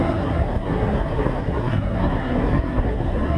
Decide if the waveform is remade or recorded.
remade